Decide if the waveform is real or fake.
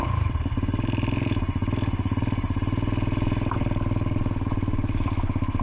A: real